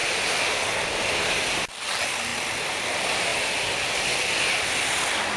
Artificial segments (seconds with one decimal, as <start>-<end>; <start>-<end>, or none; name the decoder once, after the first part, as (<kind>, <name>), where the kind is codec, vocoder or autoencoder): none